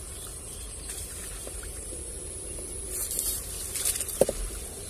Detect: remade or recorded remade